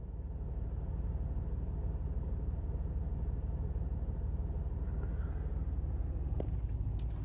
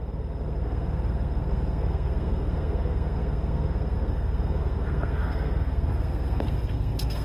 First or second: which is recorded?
first